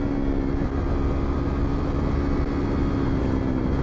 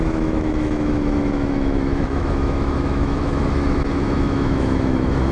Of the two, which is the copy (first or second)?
second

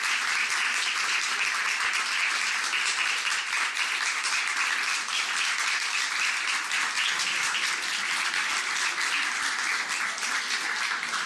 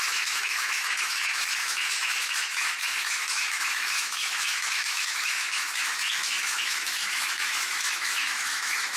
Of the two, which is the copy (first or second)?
second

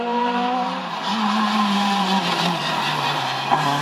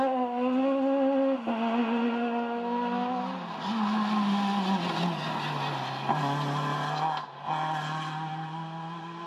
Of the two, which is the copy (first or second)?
first